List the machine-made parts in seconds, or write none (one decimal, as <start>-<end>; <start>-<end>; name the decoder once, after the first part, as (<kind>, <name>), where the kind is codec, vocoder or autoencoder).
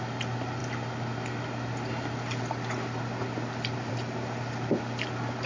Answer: none